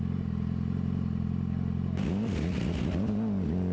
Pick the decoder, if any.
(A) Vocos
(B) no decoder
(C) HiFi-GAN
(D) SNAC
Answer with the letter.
B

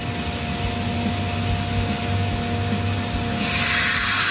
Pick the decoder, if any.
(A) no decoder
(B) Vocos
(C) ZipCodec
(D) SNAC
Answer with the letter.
A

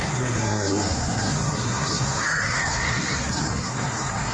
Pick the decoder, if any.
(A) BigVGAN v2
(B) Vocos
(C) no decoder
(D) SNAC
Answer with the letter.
D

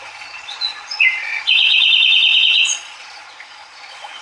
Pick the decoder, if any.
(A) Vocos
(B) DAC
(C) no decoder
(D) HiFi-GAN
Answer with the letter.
A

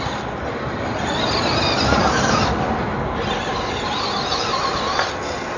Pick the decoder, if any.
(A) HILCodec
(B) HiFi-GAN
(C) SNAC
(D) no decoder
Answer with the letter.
D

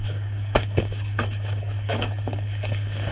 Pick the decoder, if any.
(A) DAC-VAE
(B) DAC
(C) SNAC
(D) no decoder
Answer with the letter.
B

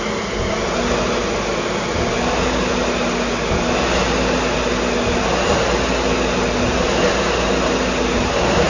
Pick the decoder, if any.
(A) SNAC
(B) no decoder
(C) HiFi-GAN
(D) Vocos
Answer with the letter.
B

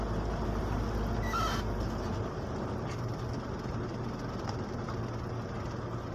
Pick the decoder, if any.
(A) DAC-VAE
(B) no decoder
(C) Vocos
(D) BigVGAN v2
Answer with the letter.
B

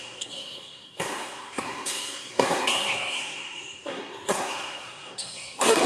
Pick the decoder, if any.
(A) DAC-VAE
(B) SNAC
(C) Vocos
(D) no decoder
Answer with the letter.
B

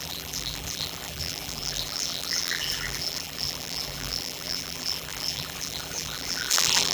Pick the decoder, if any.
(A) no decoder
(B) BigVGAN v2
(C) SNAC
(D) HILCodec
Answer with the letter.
B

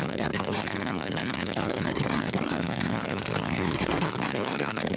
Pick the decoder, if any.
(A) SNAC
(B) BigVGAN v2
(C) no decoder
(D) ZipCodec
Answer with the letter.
A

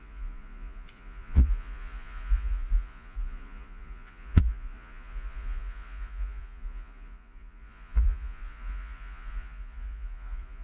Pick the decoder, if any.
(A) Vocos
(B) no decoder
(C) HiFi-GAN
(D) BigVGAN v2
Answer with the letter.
A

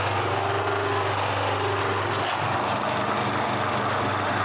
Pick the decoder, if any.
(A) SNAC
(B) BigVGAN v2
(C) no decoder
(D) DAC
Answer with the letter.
C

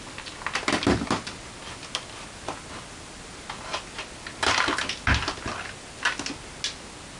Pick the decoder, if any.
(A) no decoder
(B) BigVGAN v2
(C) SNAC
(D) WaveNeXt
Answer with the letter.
A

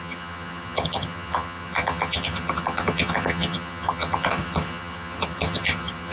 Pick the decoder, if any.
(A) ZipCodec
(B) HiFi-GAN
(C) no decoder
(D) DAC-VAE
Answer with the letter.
B